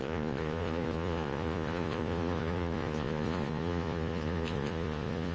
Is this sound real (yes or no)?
no